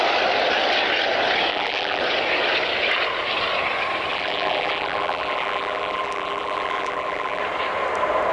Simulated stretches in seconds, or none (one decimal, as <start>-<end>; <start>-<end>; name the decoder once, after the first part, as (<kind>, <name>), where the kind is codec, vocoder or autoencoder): 1.5-2.0 (vocoder, BigVGAN v2); 4.1-7.4